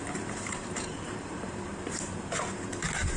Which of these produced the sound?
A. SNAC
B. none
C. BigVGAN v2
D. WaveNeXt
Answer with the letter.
C